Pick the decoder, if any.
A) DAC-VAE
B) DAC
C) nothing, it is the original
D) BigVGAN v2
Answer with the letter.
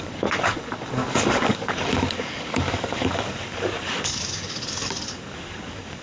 B